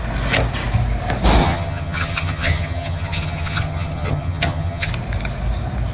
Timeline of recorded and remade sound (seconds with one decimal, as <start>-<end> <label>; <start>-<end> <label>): 0.0-1.4 recorded; 1.4-4.9 remade; 4.9-5.9 recorded